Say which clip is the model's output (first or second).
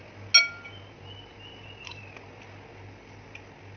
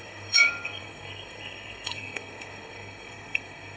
second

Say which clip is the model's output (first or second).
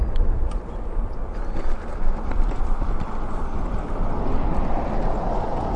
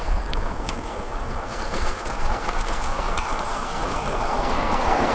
second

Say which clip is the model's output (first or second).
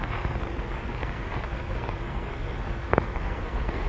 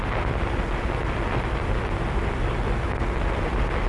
first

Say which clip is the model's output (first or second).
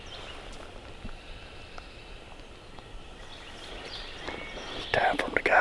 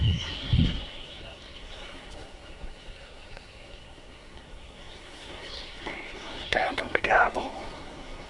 second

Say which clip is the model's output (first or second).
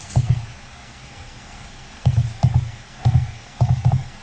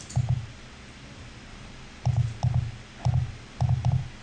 first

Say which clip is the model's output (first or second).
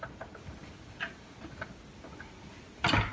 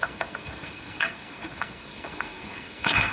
second